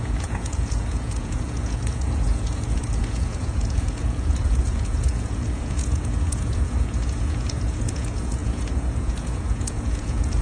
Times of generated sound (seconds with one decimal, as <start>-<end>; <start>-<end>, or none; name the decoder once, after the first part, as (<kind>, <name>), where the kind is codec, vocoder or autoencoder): 0.0-10.4 (vocoder, Vocos)